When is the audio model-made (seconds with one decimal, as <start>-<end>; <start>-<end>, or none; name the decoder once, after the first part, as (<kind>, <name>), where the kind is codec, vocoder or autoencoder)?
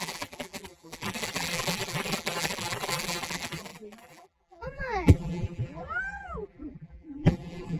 0.0-7.8 (vocoder, BigVGAN v2)